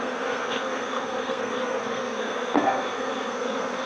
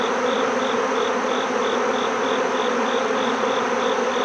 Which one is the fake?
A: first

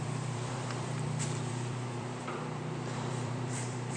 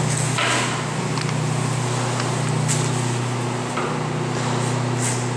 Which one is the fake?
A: first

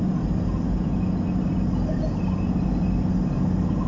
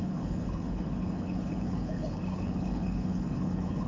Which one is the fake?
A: second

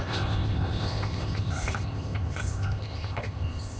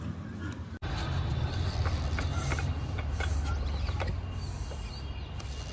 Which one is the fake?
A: first